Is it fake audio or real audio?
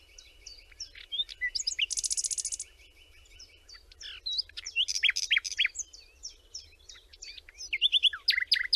real